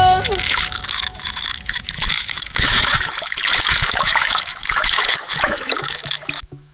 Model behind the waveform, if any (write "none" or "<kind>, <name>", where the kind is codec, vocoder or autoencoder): autoencoder, DAC-VAE